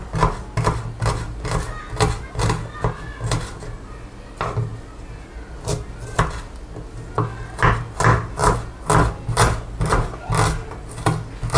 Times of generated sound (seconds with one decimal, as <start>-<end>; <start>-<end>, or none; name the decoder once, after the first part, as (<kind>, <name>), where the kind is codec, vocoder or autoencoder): none